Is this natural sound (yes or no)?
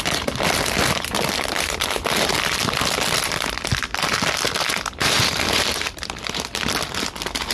no